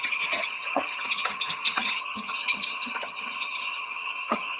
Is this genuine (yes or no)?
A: no